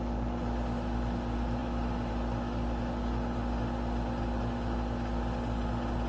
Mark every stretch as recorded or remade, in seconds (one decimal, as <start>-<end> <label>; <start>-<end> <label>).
0.0-6.1 recorded